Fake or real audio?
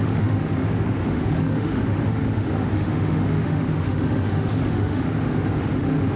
fake